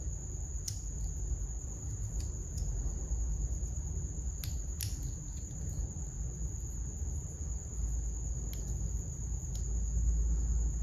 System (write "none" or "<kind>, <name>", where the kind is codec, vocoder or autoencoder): none